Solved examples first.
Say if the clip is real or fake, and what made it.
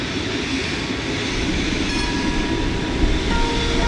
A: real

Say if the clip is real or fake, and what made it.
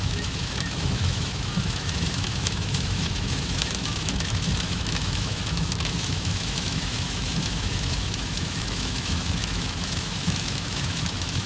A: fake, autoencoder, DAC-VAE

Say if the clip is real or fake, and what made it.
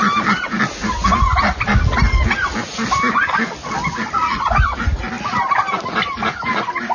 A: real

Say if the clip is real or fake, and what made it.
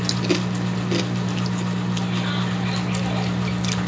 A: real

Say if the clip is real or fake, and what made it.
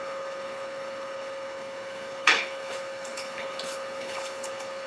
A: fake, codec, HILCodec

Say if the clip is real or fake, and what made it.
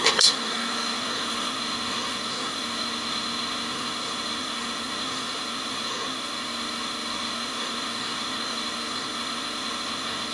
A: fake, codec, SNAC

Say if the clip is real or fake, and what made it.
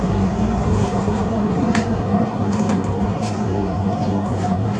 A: fake, codec, SNAC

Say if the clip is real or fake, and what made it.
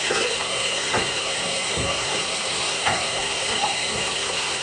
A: fake, codec, SNAC